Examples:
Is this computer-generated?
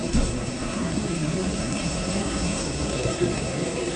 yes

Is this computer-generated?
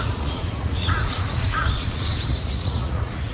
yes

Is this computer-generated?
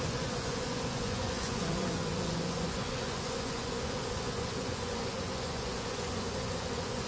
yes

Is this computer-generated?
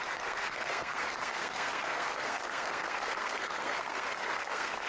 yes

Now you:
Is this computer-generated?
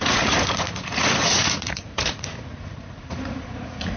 yes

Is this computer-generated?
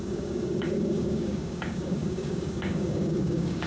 yes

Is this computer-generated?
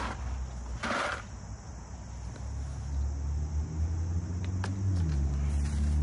no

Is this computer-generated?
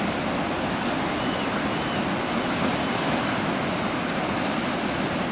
no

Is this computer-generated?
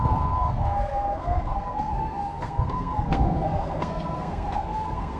yes